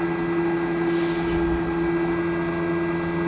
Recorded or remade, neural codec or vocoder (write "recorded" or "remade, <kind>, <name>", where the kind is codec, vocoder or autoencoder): recorded